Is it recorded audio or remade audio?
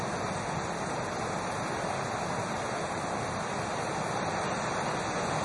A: recorded